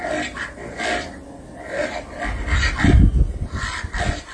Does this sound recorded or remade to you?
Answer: recorded